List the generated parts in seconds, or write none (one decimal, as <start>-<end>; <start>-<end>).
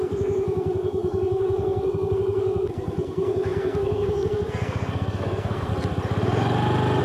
0.0-5.7